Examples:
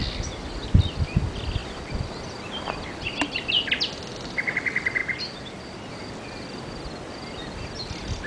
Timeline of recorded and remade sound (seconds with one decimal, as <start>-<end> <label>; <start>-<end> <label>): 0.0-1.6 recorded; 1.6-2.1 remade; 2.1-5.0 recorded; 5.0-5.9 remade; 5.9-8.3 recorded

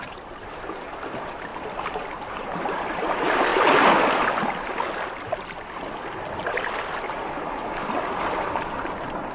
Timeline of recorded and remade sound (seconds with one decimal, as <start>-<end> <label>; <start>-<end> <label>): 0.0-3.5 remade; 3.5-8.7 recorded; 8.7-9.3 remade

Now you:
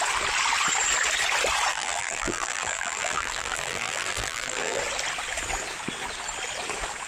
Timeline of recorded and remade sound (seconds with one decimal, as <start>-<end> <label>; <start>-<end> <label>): 0.0-1.7 recorded; 1.7-4.8 remade; 4.8-7.1 recorded